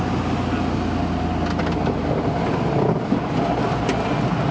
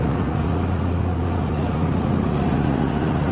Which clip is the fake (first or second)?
second